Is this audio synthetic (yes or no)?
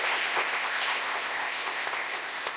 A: yes